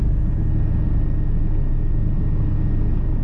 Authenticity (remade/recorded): recorded